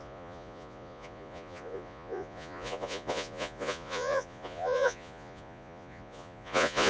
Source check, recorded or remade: remade